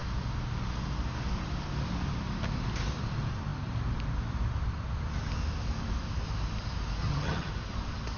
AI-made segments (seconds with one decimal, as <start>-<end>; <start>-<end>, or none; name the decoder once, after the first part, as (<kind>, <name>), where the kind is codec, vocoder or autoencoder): 7.0-7.5 (vocoder, HiFi-GAN)